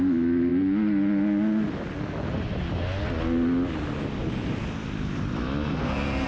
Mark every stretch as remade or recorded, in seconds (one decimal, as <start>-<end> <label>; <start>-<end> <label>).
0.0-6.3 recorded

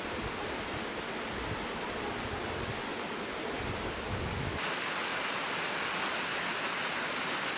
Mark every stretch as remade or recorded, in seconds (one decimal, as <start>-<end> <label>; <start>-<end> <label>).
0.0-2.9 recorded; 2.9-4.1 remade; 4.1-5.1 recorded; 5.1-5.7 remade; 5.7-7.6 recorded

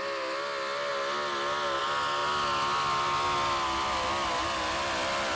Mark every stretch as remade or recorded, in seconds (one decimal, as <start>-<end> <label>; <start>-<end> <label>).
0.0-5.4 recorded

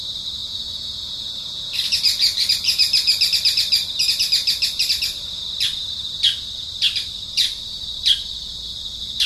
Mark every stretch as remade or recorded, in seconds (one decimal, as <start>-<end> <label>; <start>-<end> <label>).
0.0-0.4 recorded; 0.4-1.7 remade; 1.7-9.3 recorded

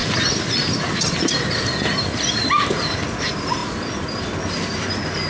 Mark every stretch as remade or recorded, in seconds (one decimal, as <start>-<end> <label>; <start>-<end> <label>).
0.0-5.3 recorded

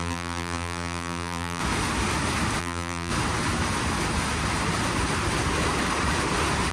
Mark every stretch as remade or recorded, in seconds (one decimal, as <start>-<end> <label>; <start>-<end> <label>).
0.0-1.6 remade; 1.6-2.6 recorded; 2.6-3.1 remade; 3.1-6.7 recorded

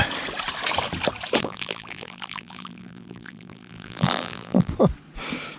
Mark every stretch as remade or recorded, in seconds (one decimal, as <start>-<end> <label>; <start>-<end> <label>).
0.0-1.4 recorded; 1.4-4.7 remade; 4.7-5.6 recorded